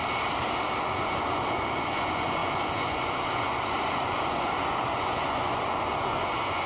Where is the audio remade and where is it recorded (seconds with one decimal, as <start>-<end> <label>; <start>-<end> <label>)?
0.0-0.8 recorded; 0.8-6.7 remade